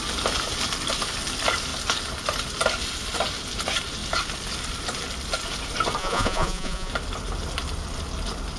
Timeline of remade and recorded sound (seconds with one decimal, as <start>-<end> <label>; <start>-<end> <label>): 0.0-6.0 recorded; 6.0-6.9 remade; 6.9-8.6 recorded